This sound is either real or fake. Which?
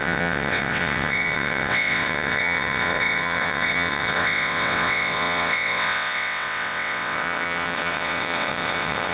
fake